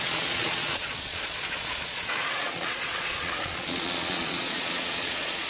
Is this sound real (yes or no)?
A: no